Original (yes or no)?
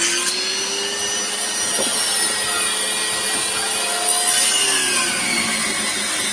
yes